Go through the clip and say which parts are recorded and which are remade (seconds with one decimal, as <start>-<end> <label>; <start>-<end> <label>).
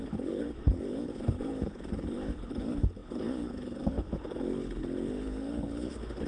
0.0-6.3 remade